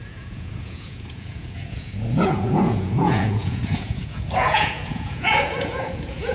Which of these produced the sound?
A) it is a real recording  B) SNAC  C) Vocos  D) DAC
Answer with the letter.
C